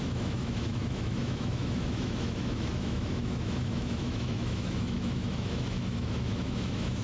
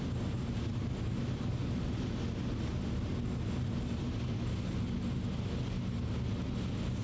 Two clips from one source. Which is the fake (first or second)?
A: first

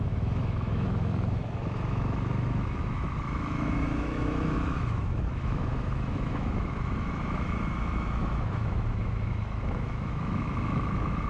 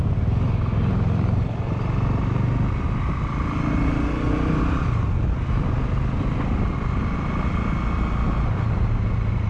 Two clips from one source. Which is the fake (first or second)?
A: first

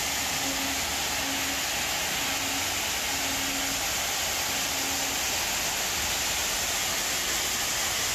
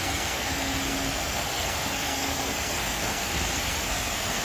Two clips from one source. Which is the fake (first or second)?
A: second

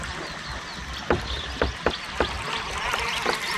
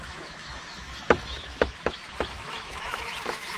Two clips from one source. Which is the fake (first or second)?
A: second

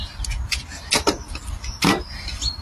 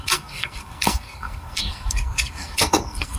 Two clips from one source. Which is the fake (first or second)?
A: second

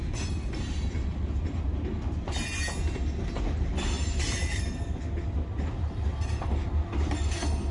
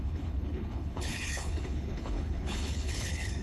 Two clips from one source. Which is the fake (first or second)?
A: second